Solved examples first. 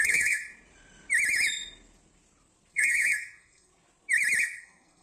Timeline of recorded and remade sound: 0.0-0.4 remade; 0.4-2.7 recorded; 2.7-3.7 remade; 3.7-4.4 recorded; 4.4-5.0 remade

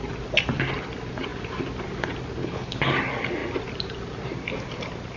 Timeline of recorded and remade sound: 0.0-2.4 recorded; 2.4-2.9 remade; 2.9-5.2 recorded

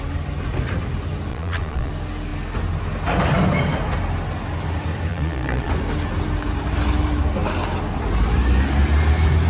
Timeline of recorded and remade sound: 0.0-1.3 recorded; 1.3-1.9 remade; 1.9-5.1 recorded; 5.1-5.7 remade; 5.7-9.5 recorded